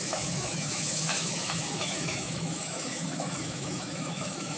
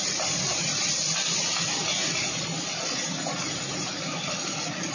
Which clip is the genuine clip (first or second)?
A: second